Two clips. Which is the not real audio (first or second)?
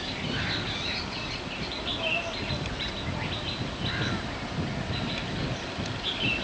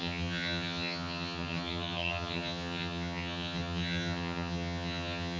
second